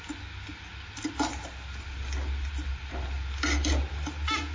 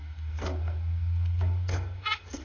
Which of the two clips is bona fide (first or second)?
first